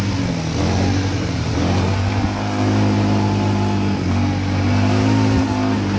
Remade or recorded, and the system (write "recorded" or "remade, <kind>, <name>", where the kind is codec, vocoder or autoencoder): recorded